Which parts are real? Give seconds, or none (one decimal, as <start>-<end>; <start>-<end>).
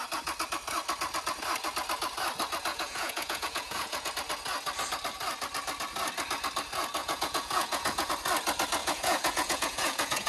0.0-2.7; 4.1-7.0; 8.1-8.8